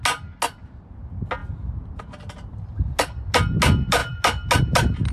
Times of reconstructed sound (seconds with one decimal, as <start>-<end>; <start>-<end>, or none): none